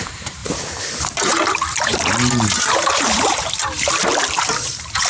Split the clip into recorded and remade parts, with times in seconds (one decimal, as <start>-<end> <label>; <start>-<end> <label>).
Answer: 0.0-5.1 remade